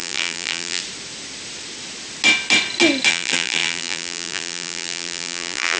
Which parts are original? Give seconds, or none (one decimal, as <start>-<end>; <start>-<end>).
0.8-3.1